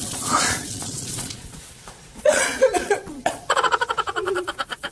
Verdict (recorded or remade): remade